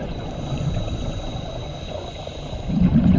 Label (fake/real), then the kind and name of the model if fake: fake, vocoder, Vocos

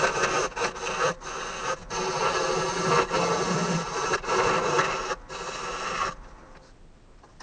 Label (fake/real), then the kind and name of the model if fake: real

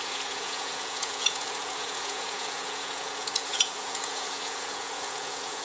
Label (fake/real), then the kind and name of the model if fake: fake, vocoder, Vocos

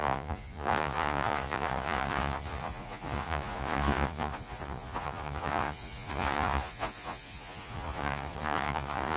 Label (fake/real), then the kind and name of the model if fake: fake, vocoder, Vocos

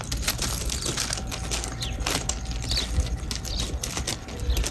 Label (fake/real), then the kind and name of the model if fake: real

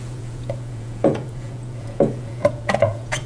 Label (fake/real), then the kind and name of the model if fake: fake, vocoder, Vocos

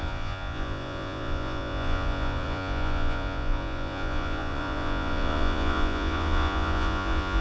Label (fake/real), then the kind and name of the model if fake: fake, vocoder, Vocos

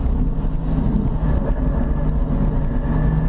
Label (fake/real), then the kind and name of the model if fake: real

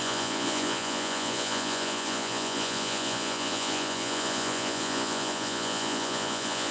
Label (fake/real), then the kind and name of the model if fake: fake, vocoder, Vocos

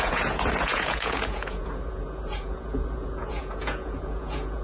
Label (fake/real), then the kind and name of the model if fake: fake, vocoder, Vocos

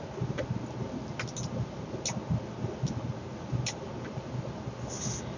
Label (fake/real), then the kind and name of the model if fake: real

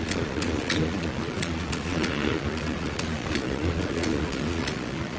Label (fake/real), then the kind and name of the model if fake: fake, vocoder, Vocos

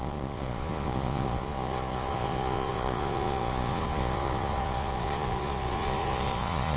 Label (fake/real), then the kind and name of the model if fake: fake, vocoder, Vocos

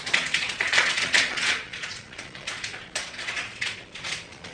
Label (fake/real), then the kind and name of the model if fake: fake, vocoder, Vocos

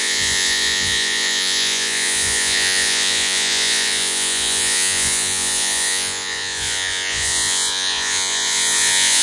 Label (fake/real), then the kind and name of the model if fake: fake, vocoder, Vocos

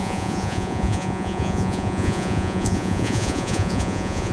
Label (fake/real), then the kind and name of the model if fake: fake, vocoder, Vocos